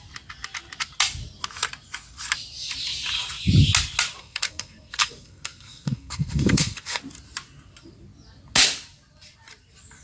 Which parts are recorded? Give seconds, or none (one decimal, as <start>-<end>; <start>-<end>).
0.0-4.2; 7.0-10.0